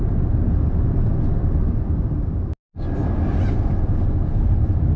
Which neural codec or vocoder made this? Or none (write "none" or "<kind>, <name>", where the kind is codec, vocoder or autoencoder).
none